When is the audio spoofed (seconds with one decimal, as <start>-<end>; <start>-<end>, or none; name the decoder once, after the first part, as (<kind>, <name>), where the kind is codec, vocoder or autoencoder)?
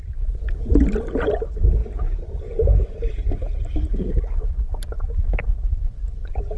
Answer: none